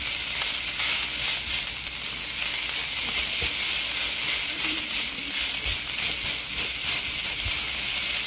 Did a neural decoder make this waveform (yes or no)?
no